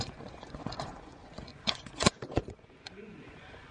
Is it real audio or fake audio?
fake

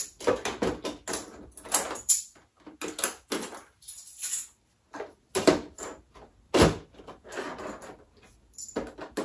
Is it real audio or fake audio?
real